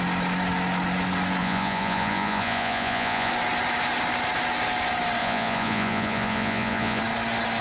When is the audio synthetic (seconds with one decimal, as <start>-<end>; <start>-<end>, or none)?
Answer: 1.4-3.3; 5.2-7.0